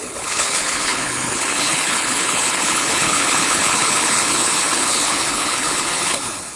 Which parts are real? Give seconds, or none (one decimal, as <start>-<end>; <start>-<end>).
none